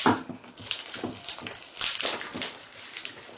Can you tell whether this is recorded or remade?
recorded